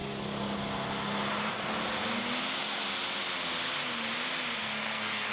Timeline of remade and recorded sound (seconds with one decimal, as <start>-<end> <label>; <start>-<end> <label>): 0.0-4.6 recorded; 4.6-5.3 remade